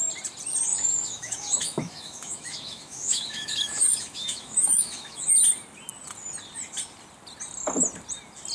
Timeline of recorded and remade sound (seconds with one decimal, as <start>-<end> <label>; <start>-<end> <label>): 0.0-0.7 recorded; 0.7-5.3 remade; 5.3-8.5 recorded